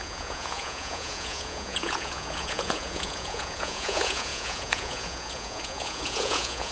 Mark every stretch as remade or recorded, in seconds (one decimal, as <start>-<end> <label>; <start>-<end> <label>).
0.0-6.7 remade